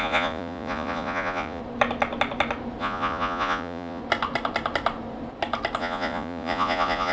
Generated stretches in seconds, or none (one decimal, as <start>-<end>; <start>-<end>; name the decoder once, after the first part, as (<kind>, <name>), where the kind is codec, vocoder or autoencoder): 0.0-1.6 (vocoder, Vocos); 2.8-4.0; 5.8-7.1